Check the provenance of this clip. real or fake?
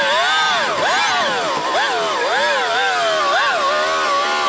real